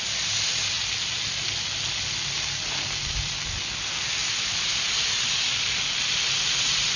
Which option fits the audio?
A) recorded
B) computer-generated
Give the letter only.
A